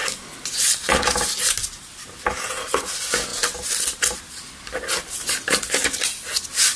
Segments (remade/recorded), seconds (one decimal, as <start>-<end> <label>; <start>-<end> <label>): 0.0-6.8 recorded